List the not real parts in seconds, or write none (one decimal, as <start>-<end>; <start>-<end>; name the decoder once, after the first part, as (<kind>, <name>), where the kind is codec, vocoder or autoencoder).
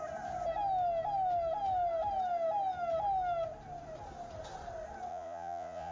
5.1-5.9 (vocoder, Vocos)